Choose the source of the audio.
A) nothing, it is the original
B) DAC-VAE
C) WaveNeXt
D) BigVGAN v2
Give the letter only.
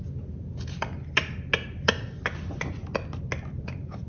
A